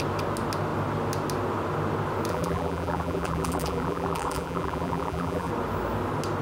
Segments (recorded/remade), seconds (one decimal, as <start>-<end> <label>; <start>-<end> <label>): 0.0-2.3 recorded; 2.3-5.5 remade; 5.5-6.4 recorded